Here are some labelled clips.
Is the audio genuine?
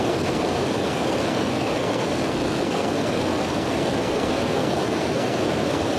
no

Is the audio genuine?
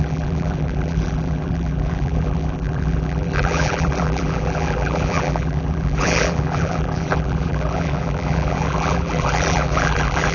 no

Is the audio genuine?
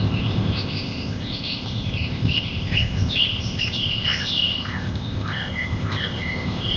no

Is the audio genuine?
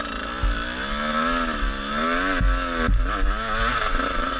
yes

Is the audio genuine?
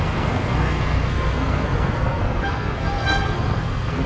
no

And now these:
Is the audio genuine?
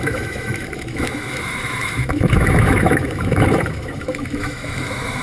no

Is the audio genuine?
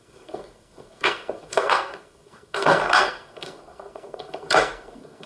no